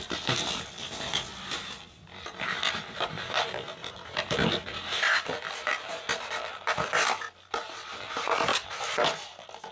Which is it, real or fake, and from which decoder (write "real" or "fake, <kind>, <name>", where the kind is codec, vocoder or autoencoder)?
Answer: real